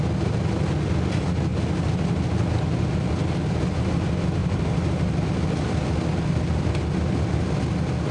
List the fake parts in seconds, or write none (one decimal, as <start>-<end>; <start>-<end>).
4.4-5.3